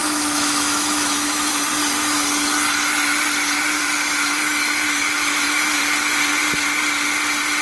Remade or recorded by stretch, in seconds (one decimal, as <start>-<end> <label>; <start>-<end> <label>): 0.0-1.5 remade; 1.5-3.8 recorded; 3.8-5.8 remade; 5.8-7.6 recorded